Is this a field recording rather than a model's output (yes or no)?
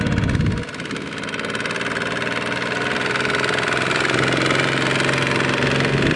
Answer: yes